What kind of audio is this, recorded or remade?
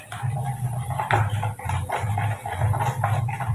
recorded